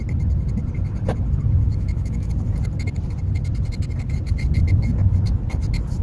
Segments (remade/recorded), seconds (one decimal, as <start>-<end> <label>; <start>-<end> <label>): 0.0-1.7 recorded; 1.7-2.3 remade; 2.3-6.0 recorded